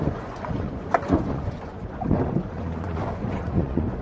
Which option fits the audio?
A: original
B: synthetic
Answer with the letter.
B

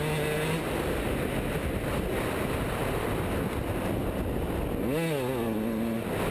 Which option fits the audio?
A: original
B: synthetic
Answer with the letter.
A